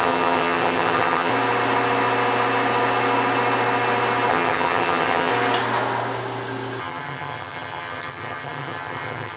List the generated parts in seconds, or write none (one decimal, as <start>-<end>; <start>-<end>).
0.0-1.3; 4.3-5.3; 6.8-9.4